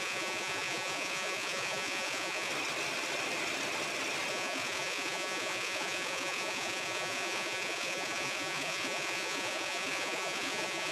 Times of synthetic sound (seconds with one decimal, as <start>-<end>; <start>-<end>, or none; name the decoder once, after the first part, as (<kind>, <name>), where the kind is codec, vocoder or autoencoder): 0.0-2.5 (vocoder, Vocos); 4.3-10.9